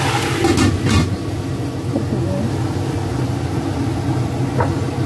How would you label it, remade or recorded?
recorded